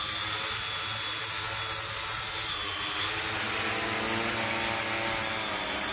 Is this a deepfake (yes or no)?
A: no